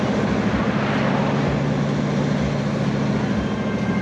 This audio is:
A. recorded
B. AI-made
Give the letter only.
A